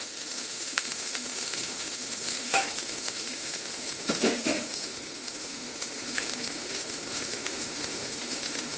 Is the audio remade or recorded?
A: remade